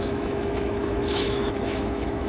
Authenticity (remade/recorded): remade